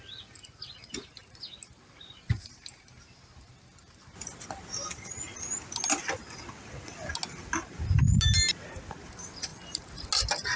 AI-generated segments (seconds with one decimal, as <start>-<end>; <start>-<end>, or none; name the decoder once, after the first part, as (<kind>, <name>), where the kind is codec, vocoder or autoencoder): none